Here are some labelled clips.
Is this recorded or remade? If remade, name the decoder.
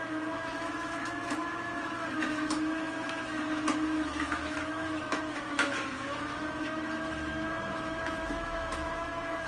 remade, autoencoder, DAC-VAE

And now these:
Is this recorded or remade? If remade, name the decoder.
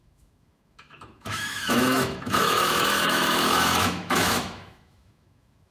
remade, autoencoder, DAC-VAE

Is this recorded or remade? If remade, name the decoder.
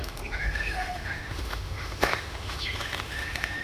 remade, autoencoder, DAC-VAE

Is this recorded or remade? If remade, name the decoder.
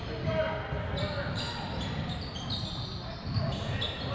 recorded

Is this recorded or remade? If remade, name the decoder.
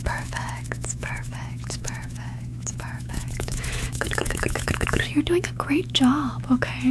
remade, autoencoder, DAC-VAE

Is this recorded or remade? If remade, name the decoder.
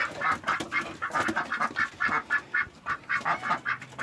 recorded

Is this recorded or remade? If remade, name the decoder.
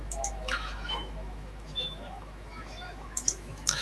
remade, autoencoder, DAC-VAE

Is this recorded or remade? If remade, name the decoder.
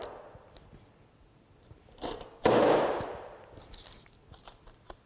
recorded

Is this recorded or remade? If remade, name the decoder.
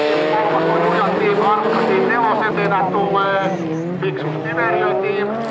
recorded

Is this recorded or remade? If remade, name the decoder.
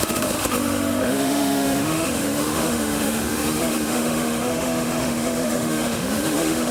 remade, autoencoder, DAC-VAE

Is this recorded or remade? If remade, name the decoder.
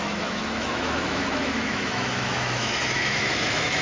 remade, autoencoder, DAC-VAE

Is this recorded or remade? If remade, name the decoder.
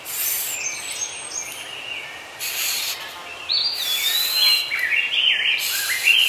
recorded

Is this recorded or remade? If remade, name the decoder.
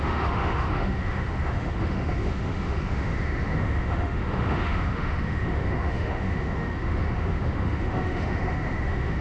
remade, autoencoder, DAC-VAE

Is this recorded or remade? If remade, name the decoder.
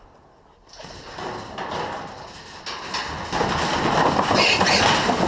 recorded